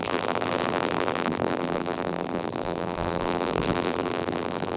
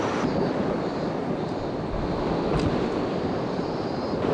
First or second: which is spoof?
first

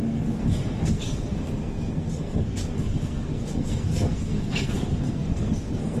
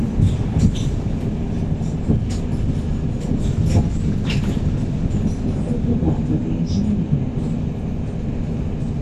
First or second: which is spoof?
first